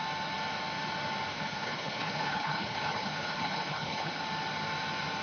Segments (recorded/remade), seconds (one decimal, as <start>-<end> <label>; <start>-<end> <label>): 0.0-1.3 recorded; 1.3-4.2 remade; 4.2-5.2 recorded